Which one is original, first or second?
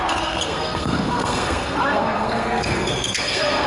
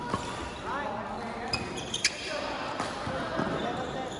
second